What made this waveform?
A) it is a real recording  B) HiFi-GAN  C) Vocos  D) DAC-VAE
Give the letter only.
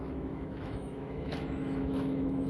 D